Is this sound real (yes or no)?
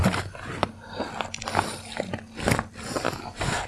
yes